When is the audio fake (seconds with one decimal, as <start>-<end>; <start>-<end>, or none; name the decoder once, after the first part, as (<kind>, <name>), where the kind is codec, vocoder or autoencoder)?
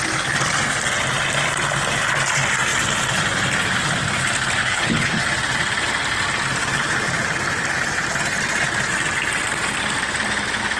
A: 4.6-5.2 (codec, HILCodec)